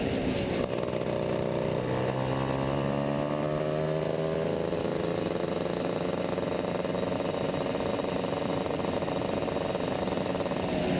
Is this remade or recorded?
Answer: recorded